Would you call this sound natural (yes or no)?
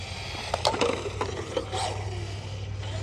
yes